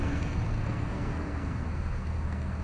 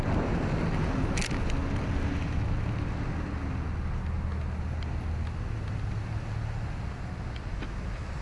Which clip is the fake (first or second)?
first